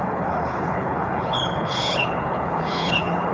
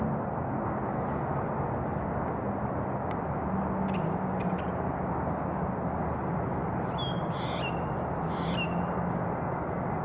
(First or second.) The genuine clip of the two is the second